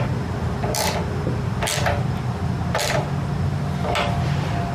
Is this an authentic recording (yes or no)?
yes